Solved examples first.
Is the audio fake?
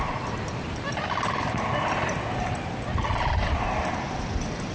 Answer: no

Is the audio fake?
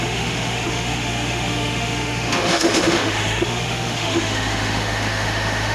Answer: yes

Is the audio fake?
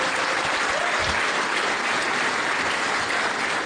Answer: no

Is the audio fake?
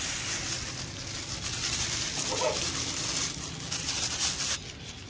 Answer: no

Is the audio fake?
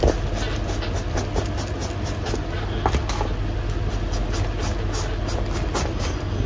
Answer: no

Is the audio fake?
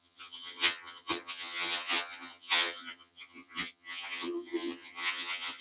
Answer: yes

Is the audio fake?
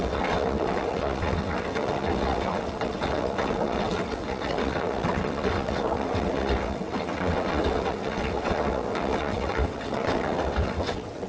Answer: yes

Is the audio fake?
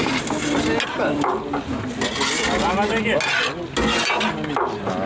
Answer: no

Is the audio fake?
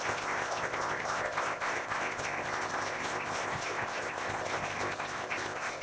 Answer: yes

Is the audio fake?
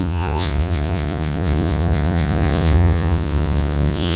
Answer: yes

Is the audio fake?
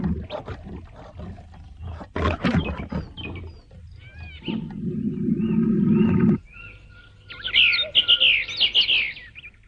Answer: no